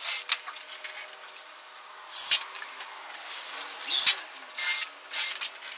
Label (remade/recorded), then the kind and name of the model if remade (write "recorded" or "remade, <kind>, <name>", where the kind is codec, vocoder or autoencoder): recorded